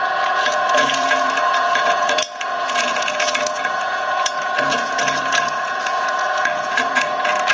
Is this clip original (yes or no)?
no